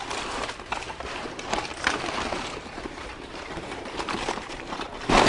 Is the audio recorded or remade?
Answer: remade